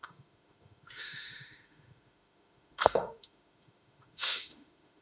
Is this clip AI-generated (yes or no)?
yes